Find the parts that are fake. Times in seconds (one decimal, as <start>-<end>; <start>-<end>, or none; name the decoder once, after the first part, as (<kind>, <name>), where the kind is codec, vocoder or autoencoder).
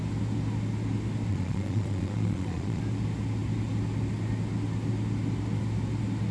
1.3-2.8 (vocoder, Vocos)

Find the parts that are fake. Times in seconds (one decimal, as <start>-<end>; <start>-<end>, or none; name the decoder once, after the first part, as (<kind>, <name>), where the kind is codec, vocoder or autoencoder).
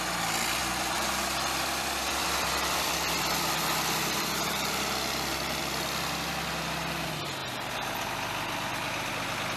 0.6-5.6 (vocoder, BigVGAN v2); 7.4-9.1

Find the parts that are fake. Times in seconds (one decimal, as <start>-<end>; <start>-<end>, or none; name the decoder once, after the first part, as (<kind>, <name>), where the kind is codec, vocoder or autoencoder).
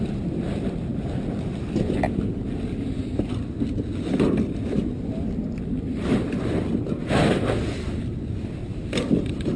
0.0-0.9 (vocoder, BigVGAN v2); 5.5-9.6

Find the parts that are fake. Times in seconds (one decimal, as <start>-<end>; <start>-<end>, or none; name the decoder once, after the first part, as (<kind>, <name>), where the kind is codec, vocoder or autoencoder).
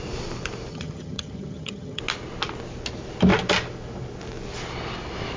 0.7-2.0 (vocoder, HiFi-GAN)